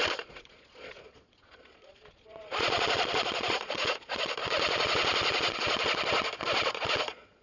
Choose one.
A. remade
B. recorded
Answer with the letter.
A